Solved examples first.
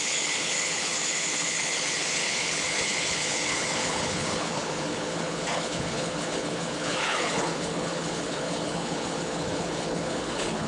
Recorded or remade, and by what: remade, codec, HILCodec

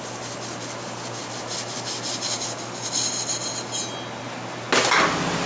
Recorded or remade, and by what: recorded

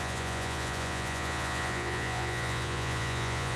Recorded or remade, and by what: remade, vocoder, Vocos